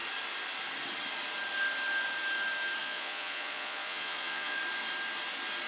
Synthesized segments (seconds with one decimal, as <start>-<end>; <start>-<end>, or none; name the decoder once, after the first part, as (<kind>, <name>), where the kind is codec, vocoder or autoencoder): 2.8-4.6 (vocoder, Vocos)